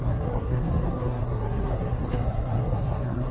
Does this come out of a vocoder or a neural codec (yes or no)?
yes